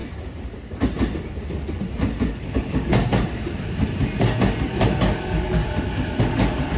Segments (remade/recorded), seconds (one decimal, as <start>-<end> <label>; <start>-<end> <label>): 0.0-2.3 recorded; 2.3-3.0 remade; 3.0-4.9 recorded; 4.9-5.6 remade; 5.6-6.2 recorded; 6.2-6.8 remade